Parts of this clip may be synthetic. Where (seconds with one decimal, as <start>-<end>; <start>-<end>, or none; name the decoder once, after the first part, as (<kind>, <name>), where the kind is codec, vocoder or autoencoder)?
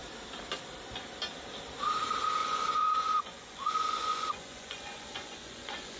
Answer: 2.4-6.0 (vocoder, Vocos)